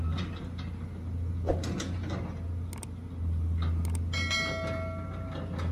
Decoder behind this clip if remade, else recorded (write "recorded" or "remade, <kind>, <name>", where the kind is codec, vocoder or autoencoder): recorded